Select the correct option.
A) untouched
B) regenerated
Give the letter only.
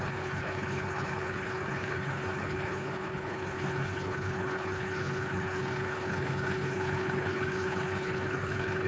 B